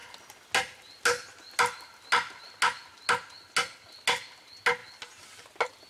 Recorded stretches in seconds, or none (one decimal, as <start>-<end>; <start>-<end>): 0.0-5.9